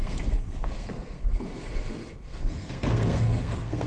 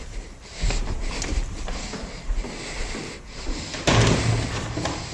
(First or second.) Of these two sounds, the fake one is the first